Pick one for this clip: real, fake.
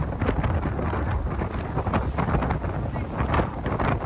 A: real